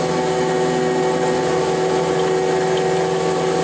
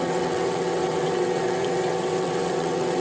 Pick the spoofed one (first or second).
second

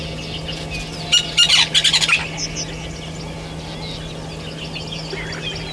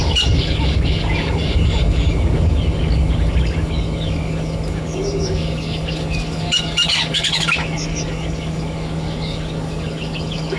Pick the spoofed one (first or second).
second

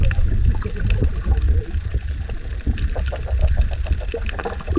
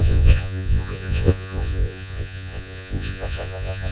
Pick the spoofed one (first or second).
second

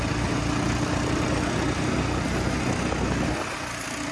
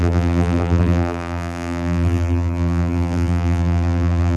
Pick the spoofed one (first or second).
second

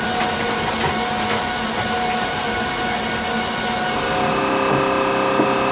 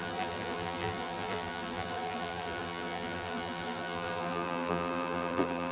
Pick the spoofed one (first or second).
second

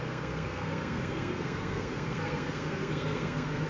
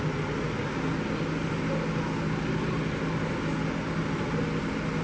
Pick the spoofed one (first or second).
first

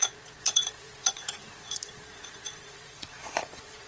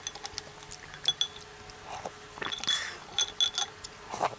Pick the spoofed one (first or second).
first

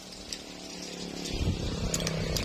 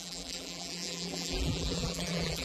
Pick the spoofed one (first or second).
second